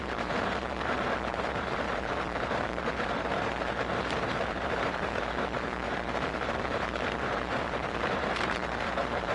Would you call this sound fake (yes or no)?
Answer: yes